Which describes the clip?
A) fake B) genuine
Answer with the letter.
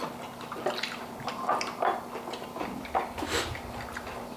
B